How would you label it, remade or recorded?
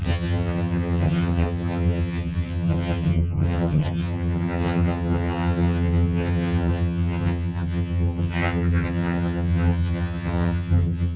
remade